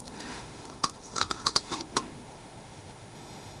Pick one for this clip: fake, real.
fake